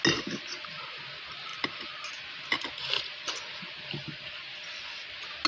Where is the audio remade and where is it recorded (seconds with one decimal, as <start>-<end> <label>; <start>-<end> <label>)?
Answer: 0.0-5.5 recorded